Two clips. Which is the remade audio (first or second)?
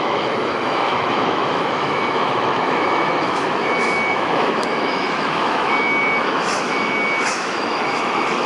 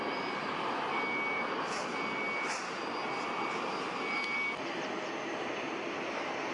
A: first